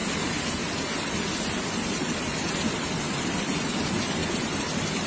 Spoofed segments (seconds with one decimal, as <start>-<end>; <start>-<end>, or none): 2.7-5.1